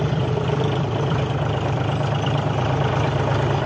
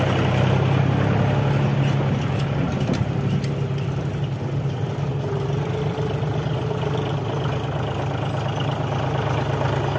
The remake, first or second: first